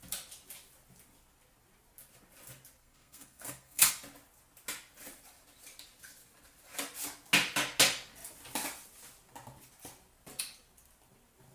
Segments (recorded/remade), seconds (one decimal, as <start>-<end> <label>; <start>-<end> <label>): 0.0-2.8 recorded; 2.8-3.9 remade; 3.9-11.5 recorded

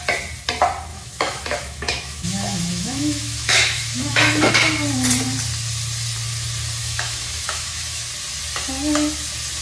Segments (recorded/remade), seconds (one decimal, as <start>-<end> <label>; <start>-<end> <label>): 0.0-0.9 recorded; 0.9-4.5 remade; 4.5-6.8 recorded; 6.8-8.0 remade; 8.0-9.6 recorded

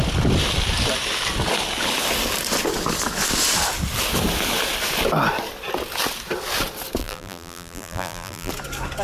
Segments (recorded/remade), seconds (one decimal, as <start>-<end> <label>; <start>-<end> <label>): 0.0-7.0 recorded; 7.0-8.5 remade; 8.5-9.0 recorded

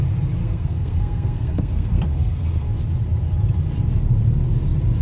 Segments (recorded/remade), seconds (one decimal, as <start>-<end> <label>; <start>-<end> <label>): 0.0-0.4 recorded; 0.4-2.7 remade; 2.7-5.0 recorded

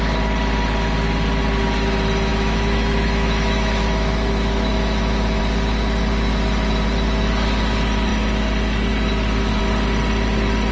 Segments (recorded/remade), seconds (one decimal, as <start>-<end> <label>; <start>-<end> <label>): 0.0-2.3 recorded; 2.3-5.4 remade; 5.4-10.7 recorded

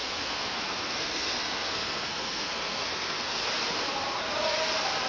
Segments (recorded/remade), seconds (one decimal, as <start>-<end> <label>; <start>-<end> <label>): 0.0-3.4 remade; 3.4-5.1 recorded